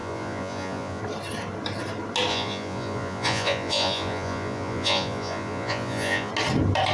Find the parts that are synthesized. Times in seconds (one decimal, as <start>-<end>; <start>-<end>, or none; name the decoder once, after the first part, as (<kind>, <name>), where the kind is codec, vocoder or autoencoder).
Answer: 0.0-1.0 (vocoder, Vocos); 2.3-6.3